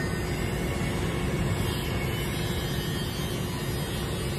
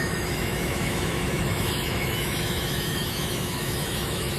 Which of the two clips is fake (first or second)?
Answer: second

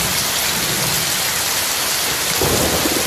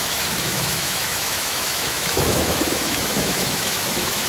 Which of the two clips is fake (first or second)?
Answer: second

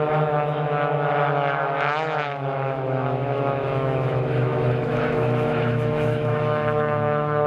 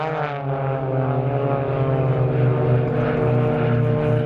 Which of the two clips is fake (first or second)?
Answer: first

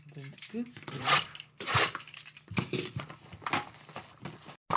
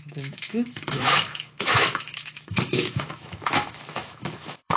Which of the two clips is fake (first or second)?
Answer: second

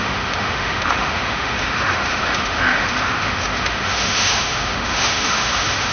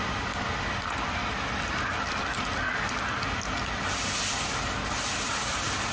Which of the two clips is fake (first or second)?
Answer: first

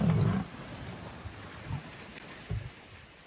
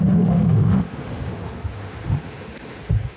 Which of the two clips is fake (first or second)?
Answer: second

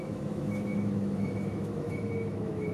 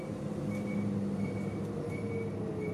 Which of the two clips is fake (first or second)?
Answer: first